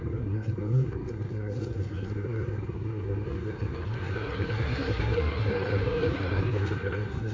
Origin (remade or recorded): remade